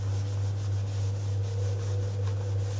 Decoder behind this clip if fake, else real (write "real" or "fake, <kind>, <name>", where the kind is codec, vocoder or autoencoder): real